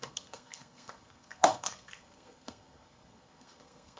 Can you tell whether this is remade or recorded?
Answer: remade